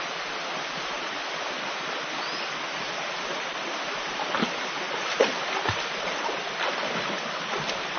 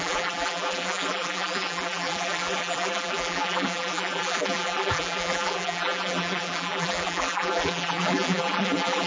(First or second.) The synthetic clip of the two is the second